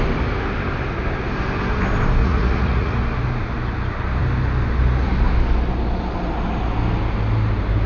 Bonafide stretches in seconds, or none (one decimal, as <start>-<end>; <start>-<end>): 0.0-2.2; 2.9-7.9